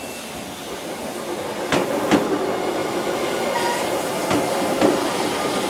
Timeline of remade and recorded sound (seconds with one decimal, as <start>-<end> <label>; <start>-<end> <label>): 0.0-5.7 recorded